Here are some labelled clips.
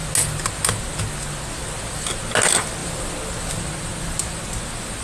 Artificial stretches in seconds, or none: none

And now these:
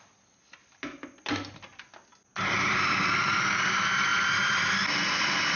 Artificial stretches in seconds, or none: none

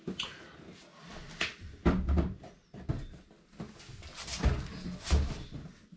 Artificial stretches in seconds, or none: none